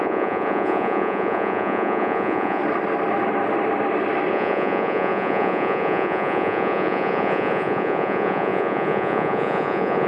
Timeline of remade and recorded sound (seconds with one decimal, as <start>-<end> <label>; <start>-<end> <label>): 0.0-2.6 remade; 2.6-4.3 recorded; 4.3-10.1 remade